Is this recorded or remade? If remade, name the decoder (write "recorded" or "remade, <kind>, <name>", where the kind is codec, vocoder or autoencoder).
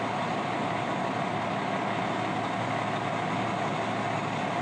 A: recorded